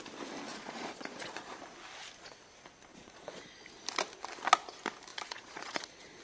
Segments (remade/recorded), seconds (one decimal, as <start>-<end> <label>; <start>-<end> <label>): 0.0-0.5 recorded; 0.5-1.6 remade; 1.6-2.9 recorded; 2.9-3.4 remade; 3.4-5.1 recorded; 5.1-6.2 remade